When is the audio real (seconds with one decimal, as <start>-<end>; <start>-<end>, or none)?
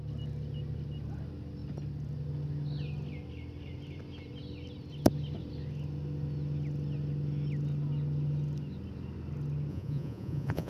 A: 0.0-9.7